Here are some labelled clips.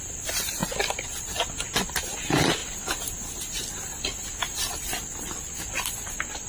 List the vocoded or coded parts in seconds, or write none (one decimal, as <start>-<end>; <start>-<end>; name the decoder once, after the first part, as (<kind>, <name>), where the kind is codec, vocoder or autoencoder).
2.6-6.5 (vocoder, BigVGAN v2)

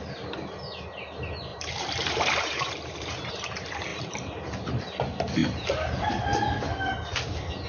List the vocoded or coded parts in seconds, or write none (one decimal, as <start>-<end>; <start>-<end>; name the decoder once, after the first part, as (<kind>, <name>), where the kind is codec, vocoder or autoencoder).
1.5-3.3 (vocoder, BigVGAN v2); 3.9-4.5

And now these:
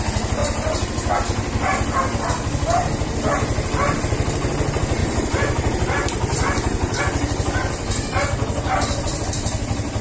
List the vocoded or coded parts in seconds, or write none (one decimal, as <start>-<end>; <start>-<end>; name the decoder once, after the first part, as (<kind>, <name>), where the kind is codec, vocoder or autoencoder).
0.4-1.1 (vocoder, BigVGAN v2); 5.0-7.0; 7.6-8.2